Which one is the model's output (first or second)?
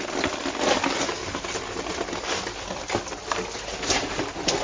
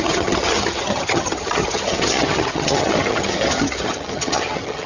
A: second